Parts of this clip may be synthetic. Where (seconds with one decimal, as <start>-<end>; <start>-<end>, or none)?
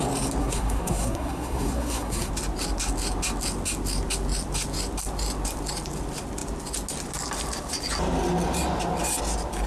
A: 0.4-2.3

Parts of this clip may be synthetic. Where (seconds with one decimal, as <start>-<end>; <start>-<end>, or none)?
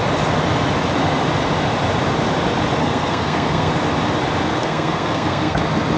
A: 2.8-3.7; 4.5-5.6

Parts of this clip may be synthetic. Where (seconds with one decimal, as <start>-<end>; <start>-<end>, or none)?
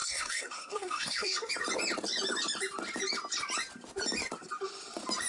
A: 0.0-1.5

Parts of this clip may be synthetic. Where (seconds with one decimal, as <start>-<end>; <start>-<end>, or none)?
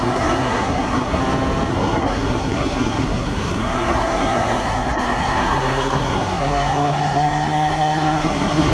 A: 0.0-1.2; 1.7-8.7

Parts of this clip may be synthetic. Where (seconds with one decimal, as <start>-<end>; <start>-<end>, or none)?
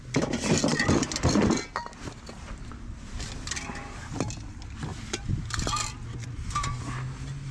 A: none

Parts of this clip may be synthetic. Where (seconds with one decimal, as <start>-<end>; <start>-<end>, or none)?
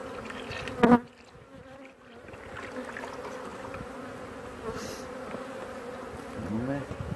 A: none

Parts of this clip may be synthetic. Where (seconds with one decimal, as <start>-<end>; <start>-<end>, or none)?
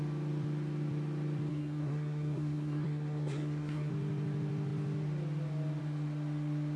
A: 1.5-3.9